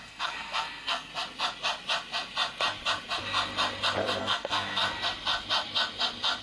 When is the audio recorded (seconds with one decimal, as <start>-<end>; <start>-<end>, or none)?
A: 1.1-4.2; 4.8-6.4